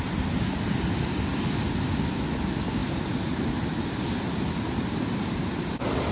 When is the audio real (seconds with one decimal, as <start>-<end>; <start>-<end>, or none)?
0.0-6.1